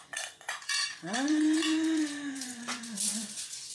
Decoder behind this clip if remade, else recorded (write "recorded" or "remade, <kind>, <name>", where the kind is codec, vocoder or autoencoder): remade, vocoder, Vocos